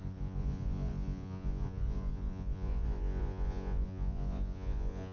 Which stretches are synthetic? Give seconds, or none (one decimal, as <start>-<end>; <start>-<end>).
0.0-5.1